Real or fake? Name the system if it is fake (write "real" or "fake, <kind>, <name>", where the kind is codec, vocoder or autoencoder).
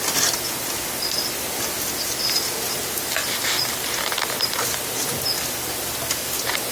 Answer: real